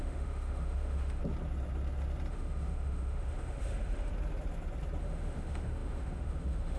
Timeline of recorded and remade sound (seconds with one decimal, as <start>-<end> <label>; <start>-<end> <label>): 0.0-1.2 remade; 1.2-2.3 recorded; 2.3-4.1 remade; 4.1-5.0 recorded; 5.0-6.8 remade